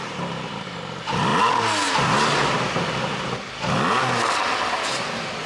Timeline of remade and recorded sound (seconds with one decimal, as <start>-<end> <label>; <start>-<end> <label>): 0.0-5.5 recorded